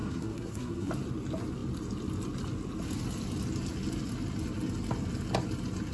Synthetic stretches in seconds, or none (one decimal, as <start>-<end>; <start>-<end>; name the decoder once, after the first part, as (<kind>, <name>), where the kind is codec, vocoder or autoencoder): 0.0-0.9 (codec, SNAC)